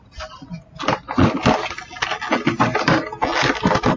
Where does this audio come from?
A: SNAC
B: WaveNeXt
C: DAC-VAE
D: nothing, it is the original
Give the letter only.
D